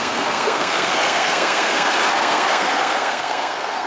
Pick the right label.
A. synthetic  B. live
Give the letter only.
A